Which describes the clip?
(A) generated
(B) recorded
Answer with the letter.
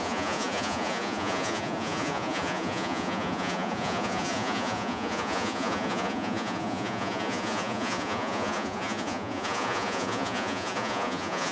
A